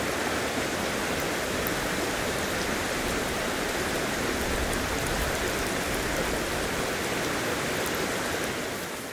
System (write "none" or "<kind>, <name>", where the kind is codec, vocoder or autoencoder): none